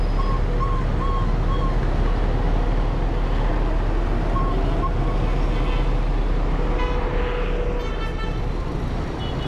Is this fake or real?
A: real